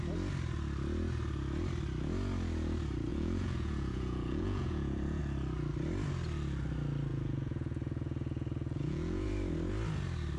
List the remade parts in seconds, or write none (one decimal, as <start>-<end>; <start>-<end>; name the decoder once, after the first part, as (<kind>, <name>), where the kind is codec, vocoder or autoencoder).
3.1-5.2 (vocoder, Vocos); 7.1-9.3